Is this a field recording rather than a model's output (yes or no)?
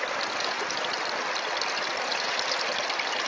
yes